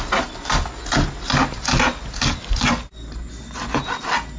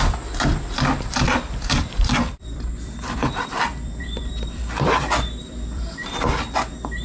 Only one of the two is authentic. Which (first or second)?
first